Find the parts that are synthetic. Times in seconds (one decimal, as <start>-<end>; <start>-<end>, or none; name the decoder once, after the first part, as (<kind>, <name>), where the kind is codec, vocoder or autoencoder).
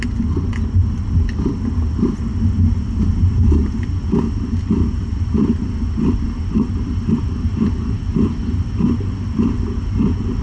none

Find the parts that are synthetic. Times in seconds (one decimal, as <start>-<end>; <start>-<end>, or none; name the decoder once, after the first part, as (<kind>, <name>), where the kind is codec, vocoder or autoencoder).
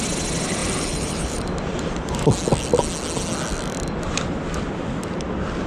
0.6-1.4 (vocoder, BigVGAN v2)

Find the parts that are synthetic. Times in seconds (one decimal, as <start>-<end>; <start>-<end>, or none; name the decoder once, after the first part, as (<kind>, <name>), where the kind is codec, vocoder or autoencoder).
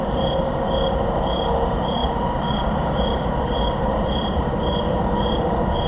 none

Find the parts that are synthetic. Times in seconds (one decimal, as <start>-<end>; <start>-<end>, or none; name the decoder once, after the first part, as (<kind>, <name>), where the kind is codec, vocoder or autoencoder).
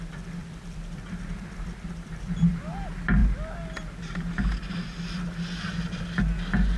0.4-2.5 (vocoder, BigVGAN v2)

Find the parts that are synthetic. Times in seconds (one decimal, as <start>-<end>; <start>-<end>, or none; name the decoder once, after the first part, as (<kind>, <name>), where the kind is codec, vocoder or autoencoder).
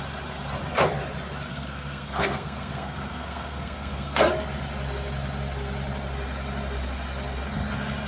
1.5-4.3 (codec, SNAC)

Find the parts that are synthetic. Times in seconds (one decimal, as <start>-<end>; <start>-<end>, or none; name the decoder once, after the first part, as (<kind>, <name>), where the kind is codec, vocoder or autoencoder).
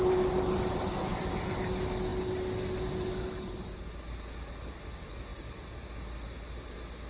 none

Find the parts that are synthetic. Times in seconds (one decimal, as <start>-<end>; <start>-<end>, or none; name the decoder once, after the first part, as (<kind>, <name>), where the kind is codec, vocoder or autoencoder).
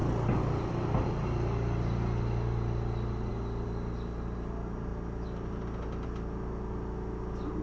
none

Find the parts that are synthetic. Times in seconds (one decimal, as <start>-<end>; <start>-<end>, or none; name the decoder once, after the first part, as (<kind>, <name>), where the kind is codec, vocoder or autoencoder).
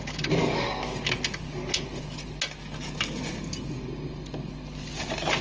0.4-1.0 (codec, DAC); 2.6-3.2